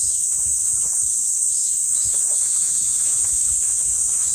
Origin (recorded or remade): remade